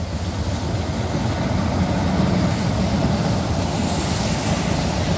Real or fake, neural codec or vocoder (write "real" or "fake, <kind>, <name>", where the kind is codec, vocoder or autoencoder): real